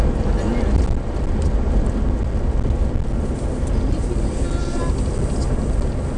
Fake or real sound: real